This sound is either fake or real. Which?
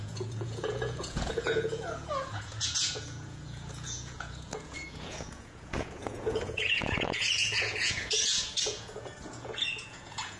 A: fake